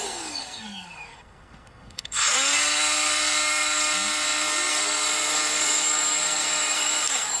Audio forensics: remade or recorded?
remade